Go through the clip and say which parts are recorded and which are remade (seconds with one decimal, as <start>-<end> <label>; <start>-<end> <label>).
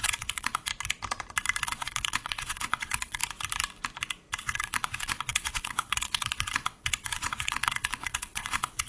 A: 0.0-0.7 remade; 0.7-1.6 recorded; 1.6-3.2 remade; 3.2-4.4 recorded; 4.4-8.9 remade